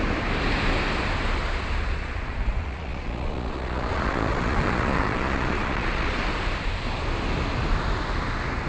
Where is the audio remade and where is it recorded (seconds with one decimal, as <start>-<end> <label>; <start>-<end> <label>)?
0.0-1.8 recorded; 1.8-6.2 remade; 6.2-8.7 recorded